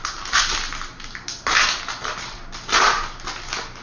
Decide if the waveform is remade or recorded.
recorded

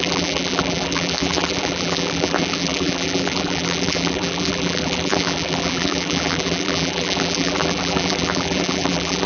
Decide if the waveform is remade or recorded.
remade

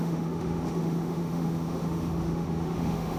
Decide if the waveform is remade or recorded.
remade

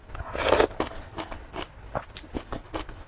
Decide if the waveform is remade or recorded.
recorded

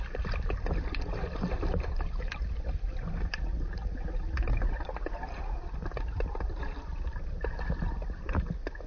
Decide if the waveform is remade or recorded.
recorded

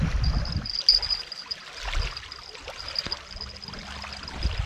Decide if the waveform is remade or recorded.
recorded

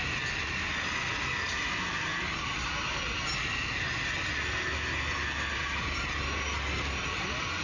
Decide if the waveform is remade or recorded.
recorded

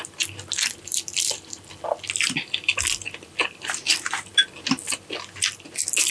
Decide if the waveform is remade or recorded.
recorded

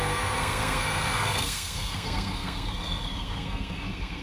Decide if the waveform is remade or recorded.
remade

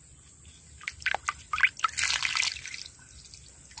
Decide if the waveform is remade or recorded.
recorded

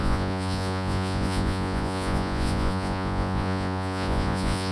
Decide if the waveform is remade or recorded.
remade